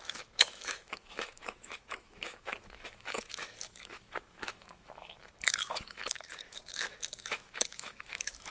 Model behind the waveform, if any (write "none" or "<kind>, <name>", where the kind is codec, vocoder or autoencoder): autoencoder, DAC-VAE